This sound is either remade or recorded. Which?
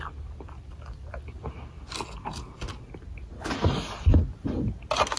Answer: recorded